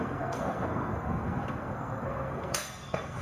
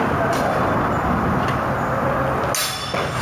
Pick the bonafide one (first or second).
second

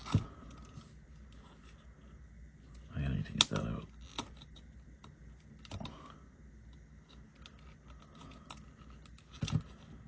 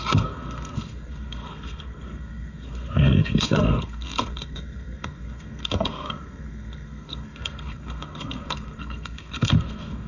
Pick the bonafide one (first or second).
first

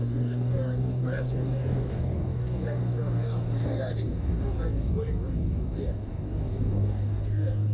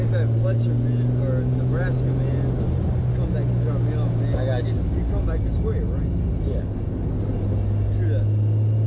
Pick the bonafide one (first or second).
second